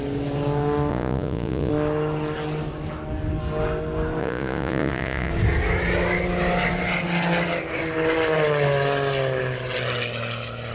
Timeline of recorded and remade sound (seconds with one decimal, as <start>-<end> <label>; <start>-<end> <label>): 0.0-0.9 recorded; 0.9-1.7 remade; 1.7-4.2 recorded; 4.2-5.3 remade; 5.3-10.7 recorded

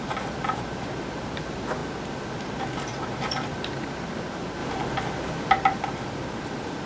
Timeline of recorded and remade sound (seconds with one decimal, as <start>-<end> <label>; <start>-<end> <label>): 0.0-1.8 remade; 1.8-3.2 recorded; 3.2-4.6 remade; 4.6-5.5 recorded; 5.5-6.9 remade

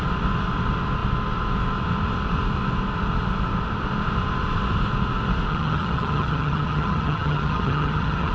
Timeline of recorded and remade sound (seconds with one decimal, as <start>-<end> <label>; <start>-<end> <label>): 0.0-5.5 recorded; 5.5-8.3 remade